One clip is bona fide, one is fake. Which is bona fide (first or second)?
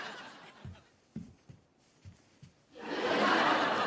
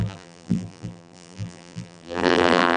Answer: first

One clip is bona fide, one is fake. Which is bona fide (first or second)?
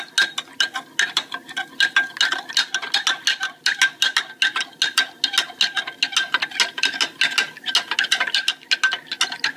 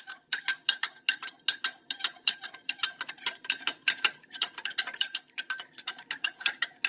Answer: first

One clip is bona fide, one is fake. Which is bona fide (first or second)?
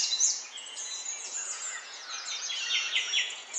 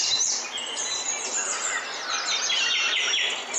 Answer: second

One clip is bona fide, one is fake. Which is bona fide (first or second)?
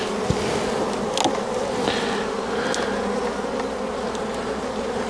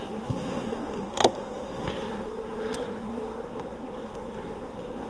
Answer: first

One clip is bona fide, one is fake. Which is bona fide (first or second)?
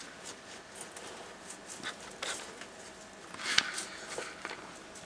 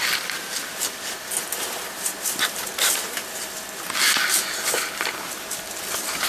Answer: first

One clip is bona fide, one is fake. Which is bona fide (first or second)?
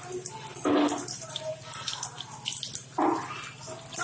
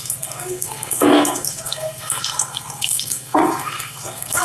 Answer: first